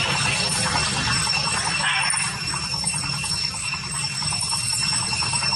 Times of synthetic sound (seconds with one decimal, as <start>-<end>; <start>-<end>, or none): 0.0-0.8; 4.2-5.6